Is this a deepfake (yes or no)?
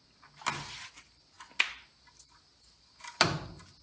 no